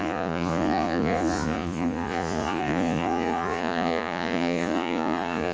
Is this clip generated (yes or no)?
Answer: yes